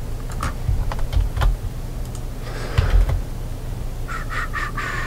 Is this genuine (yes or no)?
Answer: yes